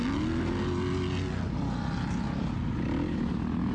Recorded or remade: recorded